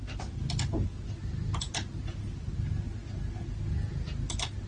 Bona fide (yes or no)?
yes